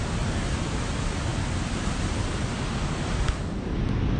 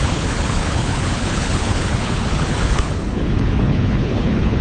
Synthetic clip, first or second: second